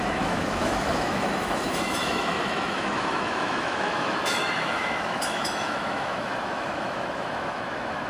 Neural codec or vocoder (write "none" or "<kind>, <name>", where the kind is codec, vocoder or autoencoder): autoencoder, DAC-VAE